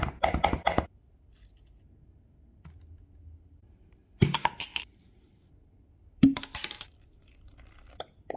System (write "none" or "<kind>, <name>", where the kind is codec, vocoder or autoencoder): none